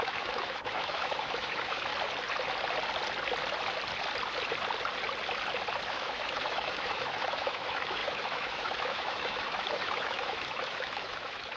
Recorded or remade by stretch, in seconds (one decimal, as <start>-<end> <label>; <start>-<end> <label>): 0.0-1.9 remade; 1.9-5.9 recorded; 5.9-11.6 remade